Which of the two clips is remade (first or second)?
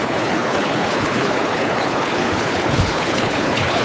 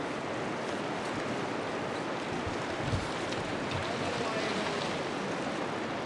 first